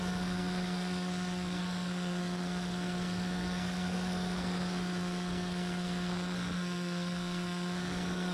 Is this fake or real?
fake